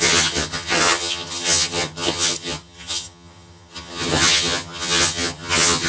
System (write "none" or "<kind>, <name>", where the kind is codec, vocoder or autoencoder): vocoder, HiFi-GAN